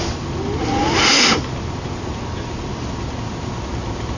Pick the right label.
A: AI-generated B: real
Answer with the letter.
B